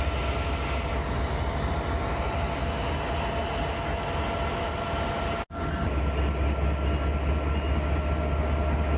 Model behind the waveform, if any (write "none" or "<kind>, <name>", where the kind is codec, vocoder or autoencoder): none